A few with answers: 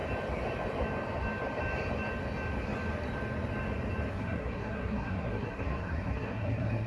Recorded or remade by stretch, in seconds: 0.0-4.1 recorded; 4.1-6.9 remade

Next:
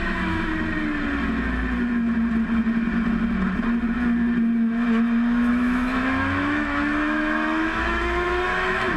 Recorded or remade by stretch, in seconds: 0.0-0.5 remade; 0.5-5.5 recorded; 5.5-9.0 remade

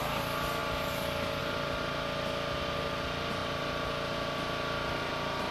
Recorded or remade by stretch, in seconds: 0.0-5.5 recorded

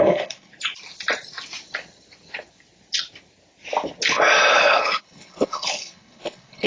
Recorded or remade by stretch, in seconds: 0.0-0.5 remade; 0.5-4.5 recorded; 4.5-6.7 remade

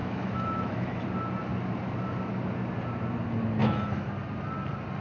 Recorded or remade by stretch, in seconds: 0.0-1.0 remade; 1.0-3.6 recorded; 3.6-4.1 remade; 4.1-5.0 recorded